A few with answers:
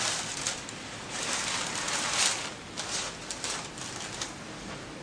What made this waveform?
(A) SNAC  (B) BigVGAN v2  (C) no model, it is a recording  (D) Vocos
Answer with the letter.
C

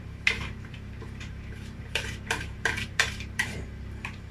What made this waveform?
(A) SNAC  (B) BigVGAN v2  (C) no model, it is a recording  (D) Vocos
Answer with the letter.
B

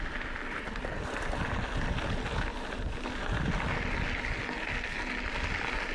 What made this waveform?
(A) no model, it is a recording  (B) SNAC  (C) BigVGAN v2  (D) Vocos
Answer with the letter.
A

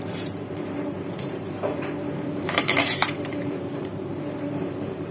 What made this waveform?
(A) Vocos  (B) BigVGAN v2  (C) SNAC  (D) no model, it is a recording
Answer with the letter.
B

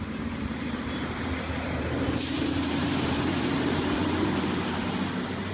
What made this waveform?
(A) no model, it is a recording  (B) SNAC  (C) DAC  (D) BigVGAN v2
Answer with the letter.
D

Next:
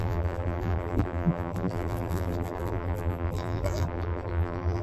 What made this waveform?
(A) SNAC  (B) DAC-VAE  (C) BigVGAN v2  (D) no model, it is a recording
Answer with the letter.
C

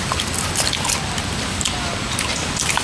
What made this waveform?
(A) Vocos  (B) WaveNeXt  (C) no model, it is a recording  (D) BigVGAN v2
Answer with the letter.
D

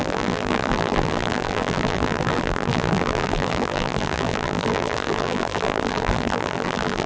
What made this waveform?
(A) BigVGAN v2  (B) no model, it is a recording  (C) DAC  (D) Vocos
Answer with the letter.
A